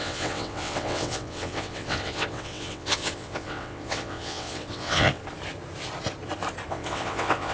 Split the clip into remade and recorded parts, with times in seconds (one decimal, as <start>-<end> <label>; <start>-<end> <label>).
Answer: 0.0-5.2 remade; 5.2-6.7 recorded; 6.7-7.5 remade